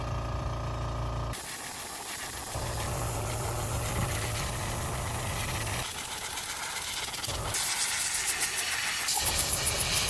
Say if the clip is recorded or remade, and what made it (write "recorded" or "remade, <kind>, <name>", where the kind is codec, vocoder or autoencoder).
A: recorded